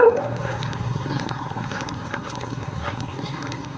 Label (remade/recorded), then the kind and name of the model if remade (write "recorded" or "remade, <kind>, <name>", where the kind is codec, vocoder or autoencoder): remade, codec, SNAC